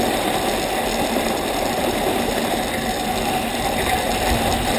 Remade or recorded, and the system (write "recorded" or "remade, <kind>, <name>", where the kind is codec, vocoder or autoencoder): recorded